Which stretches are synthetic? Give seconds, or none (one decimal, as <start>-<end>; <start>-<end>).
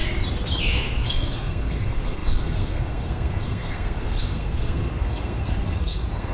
0.6-6.3